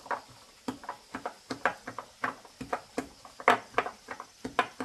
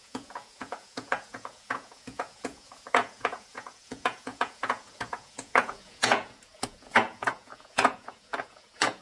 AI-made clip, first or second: second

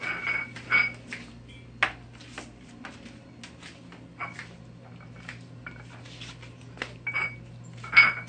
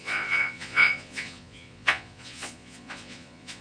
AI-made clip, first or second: second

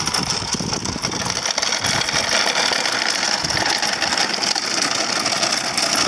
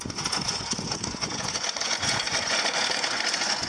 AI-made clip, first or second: second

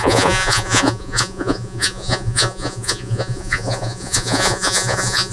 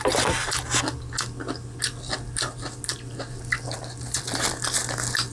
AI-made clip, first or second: first